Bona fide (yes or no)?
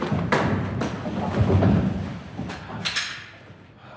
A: yes